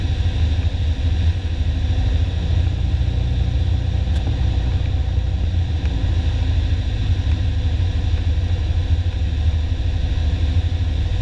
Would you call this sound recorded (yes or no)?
yes